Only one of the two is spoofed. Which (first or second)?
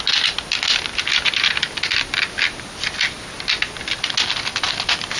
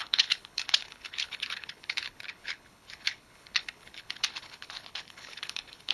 second